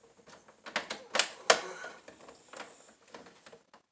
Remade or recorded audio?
recorded